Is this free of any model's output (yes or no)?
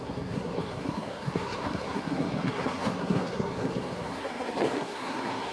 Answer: no